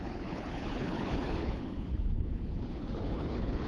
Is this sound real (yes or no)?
no